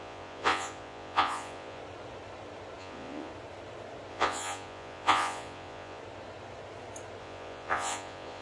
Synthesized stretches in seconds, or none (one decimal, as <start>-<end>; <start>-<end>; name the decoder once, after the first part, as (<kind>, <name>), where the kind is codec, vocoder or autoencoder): 0.0-1.8 (vocoder, Vocos); 2.8-3.3; 4.1-6.0; 7.2-8.4